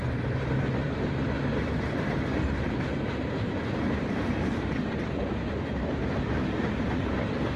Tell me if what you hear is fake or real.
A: fake